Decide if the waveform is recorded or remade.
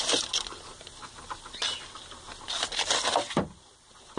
recorded